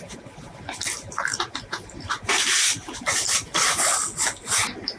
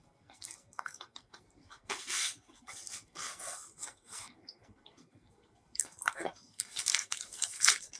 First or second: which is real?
first